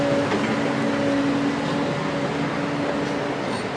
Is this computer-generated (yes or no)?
no